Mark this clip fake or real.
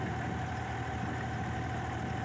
real